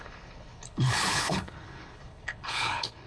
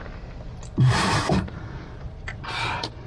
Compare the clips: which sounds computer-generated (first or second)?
first